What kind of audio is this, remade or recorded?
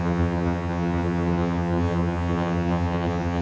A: remade